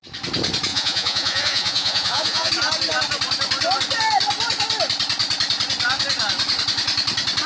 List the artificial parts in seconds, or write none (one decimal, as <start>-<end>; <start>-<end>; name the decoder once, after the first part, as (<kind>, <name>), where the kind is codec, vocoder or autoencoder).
0.7-2.5 (vocoder, Vocos)